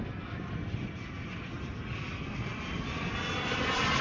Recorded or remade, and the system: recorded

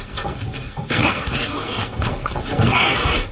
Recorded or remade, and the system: remade, codec, SNAC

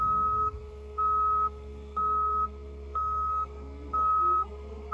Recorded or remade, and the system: remade, codec, SNAC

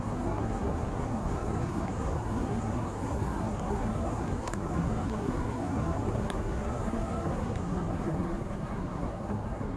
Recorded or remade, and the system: remade, codec, SNAC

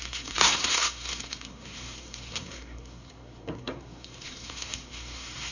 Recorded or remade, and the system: remade, codec, SNAC